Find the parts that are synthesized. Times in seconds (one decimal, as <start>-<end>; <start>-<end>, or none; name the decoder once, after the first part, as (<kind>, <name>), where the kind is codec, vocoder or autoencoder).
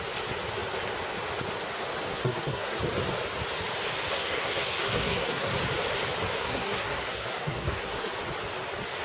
2.1-2.8 (codec, SNAC); 4.1-5.5; 6.4-8.1